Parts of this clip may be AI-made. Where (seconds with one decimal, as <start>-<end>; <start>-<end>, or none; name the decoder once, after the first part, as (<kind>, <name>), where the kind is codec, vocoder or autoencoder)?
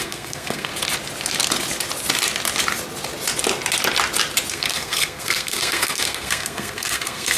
0.0-0.7 (codec, SNAC); 4.5-7.4